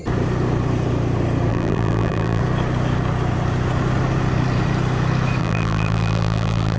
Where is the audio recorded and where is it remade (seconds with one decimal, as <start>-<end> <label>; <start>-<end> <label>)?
0.0-1.5 recorded; 1.5-2.4 remade; 2.4-5.4 recorded; 5.4-6.8 remade